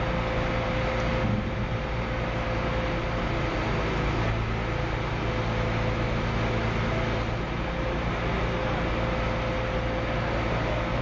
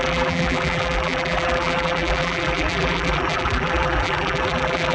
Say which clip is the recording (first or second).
first